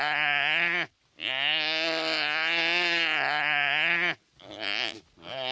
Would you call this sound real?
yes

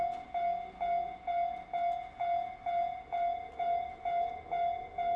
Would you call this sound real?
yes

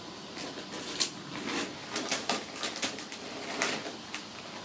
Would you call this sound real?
yes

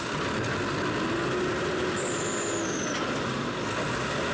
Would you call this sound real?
yes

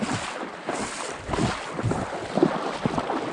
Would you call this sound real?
yes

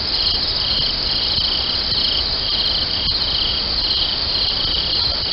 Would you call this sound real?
yes